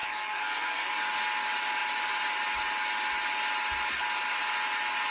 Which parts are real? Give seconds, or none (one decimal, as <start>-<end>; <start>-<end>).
0.9-5.1